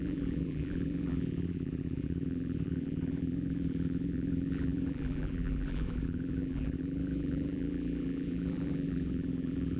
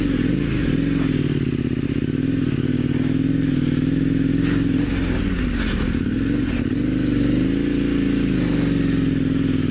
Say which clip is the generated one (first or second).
first